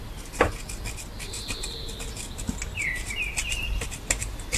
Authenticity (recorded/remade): recorded